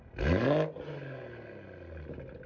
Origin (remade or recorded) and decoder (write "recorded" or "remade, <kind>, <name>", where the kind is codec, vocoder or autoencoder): recorded